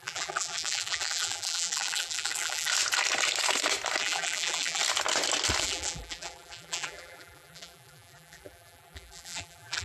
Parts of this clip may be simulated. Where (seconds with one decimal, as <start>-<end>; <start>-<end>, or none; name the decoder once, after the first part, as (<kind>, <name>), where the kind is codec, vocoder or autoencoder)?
0.0-2.7 (vocoder, BigVGAN v2); 4.0-4.8; 5.6-9.8